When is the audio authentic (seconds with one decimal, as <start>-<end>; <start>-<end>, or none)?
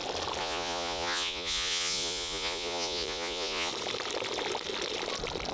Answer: 0.0-0.4; 3.7-5.5